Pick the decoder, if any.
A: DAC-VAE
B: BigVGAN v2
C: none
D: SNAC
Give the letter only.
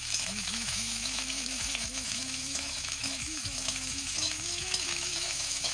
A